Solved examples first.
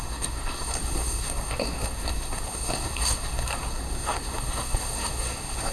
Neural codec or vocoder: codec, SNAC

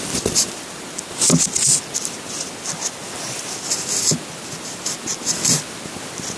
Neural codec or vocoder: none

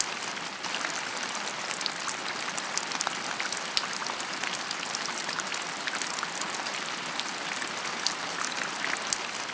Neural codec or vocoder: none